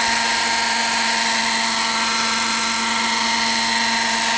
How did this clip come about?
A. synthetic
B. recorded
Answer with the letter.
B